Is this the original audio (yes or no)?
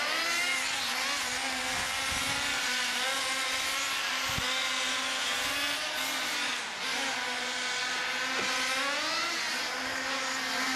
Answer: yes